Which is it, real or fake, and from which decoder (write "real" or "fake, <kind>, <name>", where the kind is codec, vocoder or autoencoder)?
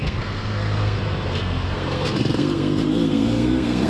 fake, codec, SNAC